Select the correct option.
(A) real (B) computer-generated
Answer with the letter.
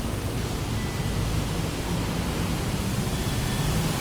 A